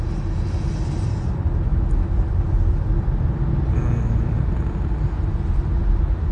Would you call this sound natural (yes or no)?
yes